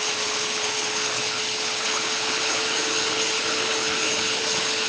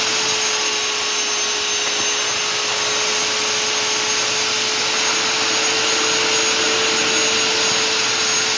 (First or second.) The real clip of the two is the second